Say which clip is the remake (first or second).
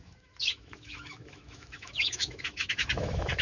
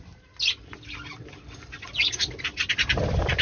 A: first